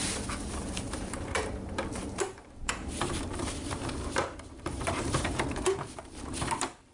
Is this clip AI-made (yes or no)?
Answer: yes